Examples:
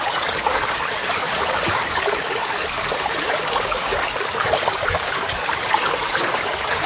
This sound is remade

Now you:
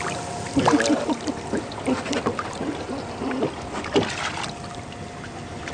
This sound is recorded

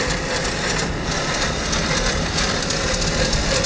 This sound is recorded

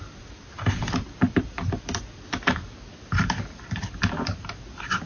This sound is recorded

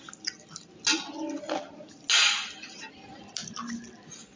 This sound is recorded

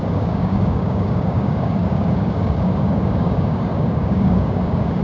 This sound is remade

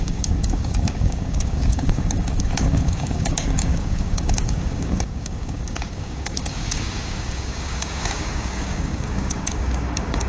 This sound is remade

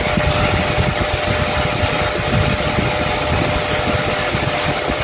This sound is recorded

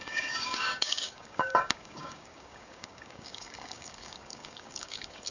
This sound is remade